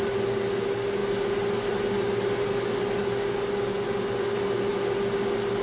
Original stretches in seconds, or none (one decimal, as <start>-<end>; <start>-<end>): 0.0-5.6

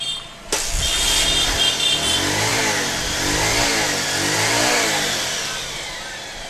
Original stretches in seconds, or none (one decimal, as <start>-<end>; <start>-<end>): 0.0-6.5

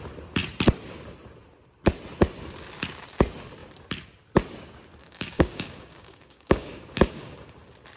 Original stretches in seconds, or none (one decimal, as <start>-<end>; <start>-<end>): 0.0-5.0; 7.5-8.0

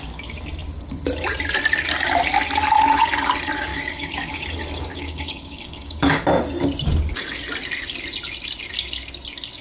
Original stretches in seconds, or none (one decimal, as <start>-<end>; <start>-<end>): 0.0-3.7; 4.3-4.9; 6.2-9.6

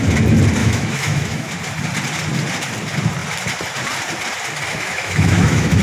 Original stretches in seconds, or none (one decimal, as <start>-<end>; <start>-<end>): 0.0-0.6; 1.5-4.7

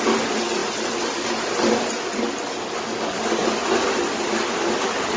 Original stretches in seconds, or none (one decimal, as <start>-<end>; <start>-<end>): 0.0-5.2